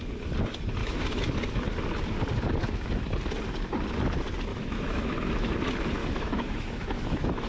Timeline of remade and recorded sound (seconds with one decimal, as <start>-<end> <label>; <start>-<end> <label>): 0.0-0.8 recorded; 0.8-1.3 remade; 1.3-4.5 recorded; 4.5-5.5 remade; 5.5-6.0 recorded; 6.0-7.5 remade